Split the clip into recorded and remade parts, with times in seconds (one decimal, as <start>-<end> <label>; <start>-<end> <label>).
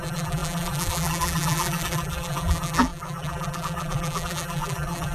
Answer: 0.0-5.1 remade